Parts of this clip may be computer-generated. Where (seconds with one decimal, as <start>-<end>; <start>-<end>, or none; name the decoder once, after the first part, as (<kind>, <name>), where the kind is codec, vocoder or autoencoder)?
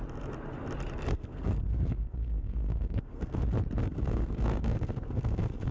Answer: 1.1-3.4 (codec, SNAC); 3.8-5.7